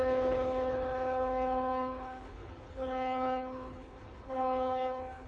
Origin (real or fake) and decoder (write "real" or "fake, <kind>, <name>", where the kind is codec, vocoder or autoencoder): fake, codec, HILCodec